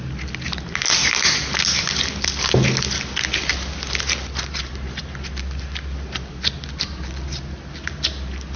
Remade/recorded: recorded